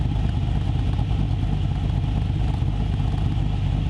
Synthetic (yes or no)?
no